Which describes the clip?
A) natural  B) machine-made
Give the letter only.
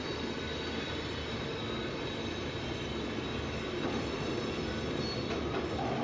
A